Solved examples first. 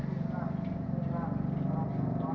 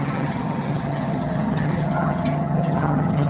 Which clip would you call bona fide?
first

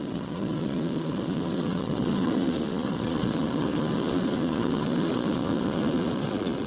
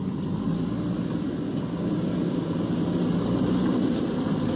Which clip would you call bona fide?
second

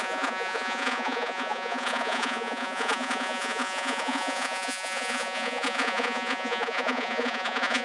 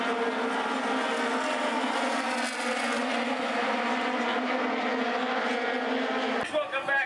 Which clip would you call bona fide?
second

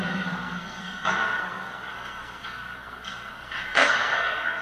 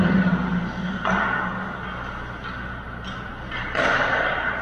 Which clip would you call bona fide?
second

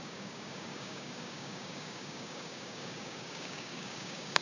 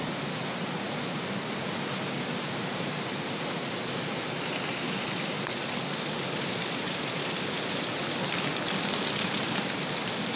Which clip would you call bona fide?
second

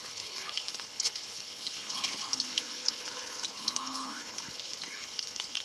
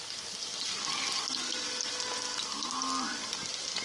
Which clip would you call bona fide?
second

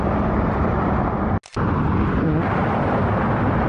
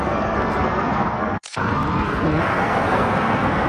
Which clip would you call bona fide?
first